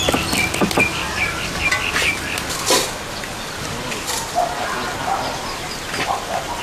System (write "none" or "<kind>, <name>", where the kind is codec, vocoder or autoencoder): none